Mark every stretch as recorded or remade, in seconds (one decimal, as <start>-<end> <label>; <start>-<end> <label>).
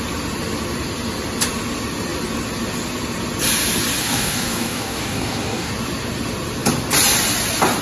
0.0-4.0 recorded; 4.0-5.7 remade; 5.7-7.8 recorded